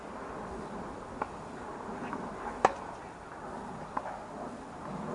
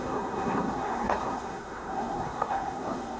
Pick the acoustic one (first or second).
first